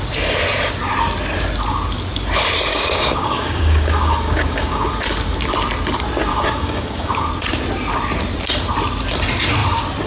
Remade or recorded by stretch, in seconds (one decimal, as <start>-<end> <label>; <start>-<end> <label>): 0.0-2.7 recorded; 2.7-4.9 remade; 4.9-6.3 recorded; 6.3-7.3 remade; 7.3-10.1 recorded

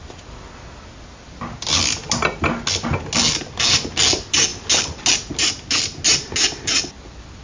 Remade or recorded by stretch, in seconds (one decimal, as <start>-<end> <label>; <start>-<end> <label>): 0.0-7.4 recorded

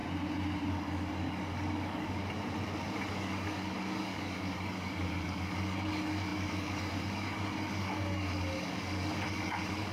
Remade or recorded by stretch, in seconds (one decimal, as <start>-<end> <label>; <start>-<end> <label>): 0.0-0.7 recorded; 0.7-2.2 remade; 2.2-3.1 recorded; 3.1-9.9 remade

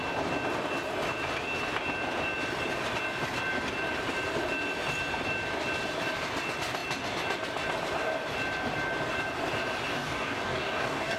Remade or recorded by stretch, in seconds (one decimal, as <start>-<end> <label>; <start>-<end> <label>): 0.0-9.9 recorded; 9.9-11.2 remade